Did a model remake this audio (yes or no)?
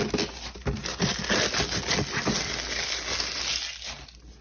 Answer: no